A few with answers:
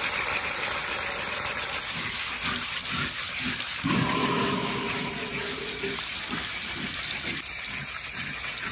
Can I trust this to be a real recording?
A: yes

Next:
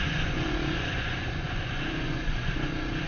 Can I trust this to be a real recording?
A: no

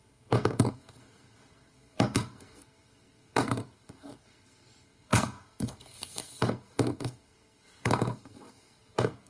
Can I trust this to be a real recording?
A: no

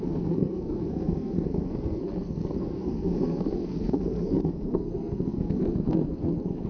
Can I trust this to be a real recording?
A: no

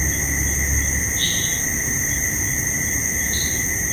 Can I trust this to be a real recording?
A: yes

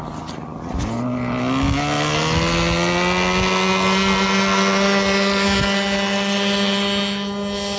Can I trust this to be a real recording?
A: yes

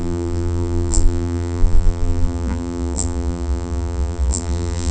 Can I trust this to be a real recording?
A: no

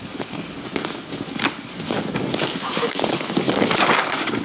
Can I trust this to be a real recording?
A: no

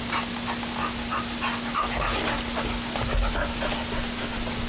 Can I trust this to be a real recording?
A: yes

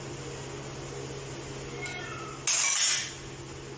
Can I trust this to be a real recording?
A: yes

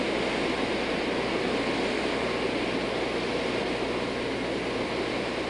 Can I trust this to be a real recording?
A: yes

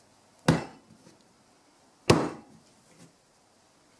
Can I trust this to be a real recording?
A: yes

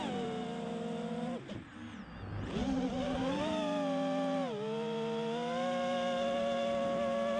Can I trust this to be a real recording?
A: yes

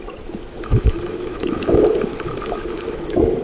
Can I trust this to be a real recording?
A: no